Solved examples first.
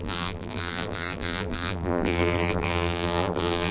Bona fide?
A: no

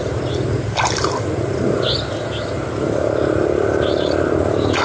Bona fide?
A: yes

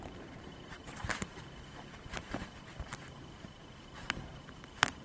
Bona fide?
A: no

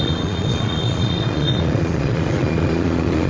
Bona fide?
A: no